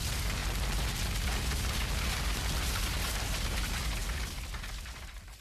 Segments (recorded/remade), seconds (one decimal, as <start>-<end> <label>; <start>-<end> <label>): 0.0-5.4 remade